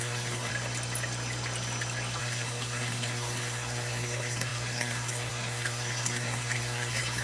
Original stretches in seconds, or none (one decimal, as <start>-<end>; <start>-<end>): 0.5-2.2